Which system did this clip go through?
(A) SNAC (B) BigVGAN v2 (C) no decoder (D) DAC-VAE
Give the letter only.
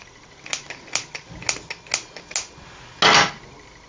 C